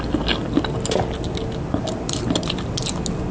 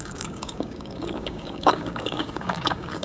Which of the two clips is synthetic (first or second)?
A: second